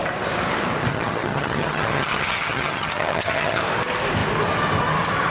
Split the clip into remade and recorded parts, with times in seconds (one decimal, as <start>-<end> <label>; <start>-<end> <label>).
0.0-0.9 recorded; 0.9-3.6 remade; 3.6-5.3 recorded